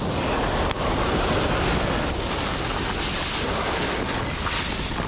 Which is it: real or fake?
real